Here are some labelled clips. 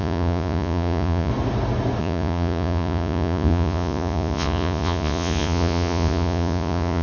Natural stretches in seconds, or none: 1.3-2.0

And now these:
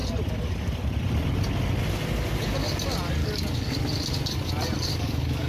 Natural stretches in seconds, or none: 0.0-3.2; 3.7-4.9

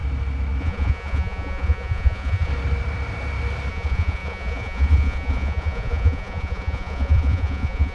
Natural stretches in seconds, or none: 0.0-0.6; 2.5-3.7

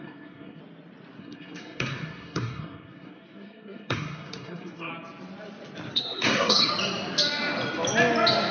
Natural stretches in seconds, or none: 0.6-1.2; 4.9-5.9; 6.7-8.5

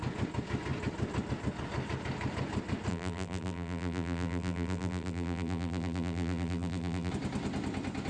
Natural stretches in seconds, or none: 0.0-2.9; 7.1-8.1

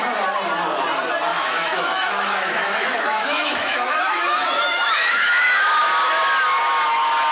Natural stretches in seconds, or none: 0.0-1.3; 5.6-7.3